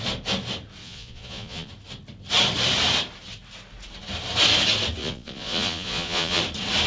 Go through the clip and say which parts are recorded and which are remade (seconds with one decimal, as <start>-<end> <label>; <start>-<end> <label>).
0.0-0.8 recorded; 0.8-1.7 remade; 1.7-5.0 recorded; 5.0-6.4 remade; 6.4-6.9 recorded